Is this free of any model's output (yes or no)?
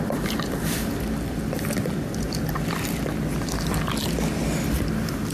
yes